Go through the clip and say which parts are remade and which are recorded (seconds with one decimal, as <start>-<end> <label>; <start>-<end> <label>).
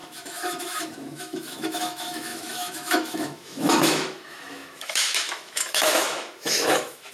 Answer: 0.0-7.1 remade